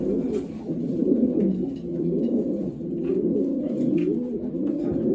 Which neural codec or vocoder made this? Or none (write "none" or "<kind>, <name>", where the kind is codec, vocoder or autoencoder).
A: none